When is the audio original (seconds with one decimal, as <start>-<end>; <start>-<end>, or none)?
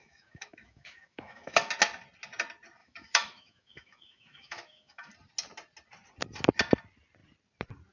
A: 1.7-2.8; 5.1-7.9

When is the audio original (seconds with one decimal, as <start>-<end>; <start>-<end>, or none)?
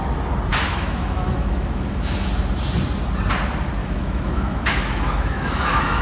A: 0.0-0.5; 2.3-3.8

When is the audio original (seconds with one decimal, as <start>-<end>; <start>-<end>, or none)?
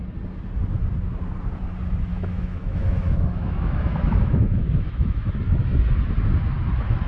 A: 0.0-2.1; 5.3-7.1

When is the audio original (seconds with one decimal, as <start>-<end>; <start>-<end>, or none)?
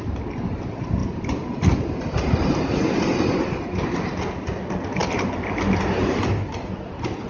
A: 0.0-7.3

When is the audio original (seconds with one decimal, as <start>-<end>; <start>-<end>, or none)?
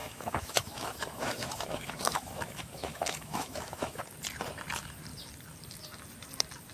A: 4.0-6.7